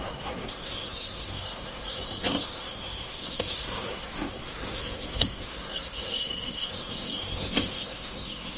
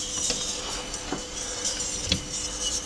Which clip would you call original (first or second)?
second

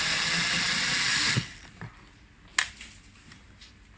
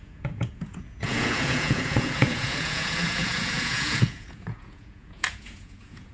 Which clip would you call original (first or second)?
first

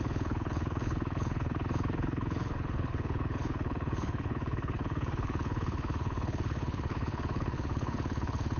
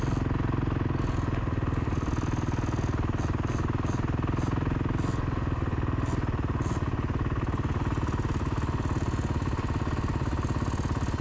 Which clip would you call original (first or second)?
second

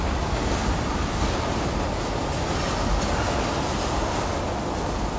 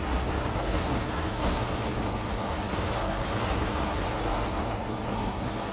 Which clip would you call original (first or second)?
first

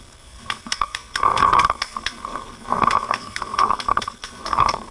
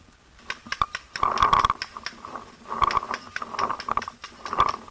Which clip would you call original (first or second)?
second